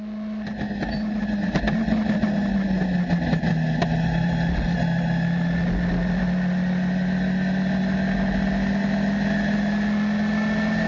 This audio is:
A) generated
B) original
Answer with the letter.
B